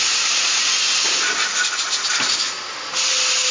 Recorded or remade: recorded